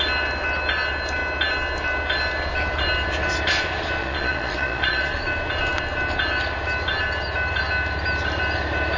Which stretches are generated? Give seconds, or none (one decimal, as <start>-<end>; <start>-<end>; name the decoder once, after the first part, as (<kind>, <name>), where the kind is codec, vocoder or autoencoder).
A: 4.0-5.2 (vocoder, Vocos)